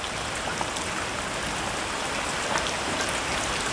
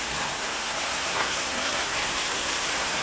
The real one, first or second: first